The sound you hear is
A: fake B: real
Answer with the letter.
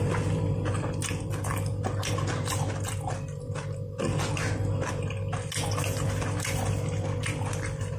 B